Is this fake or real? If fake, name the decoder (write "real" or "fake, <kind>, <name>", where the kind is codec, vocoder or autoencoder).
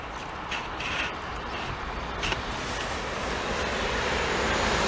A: real